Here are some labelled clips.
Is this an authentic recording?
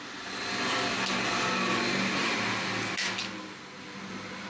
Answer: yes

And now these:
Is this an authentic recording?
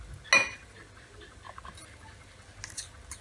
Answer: yes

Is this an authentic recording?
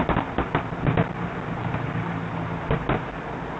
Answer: yes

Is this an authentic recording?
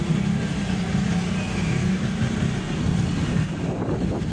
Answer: yes